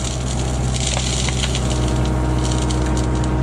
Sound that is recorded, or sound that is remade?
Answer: recorded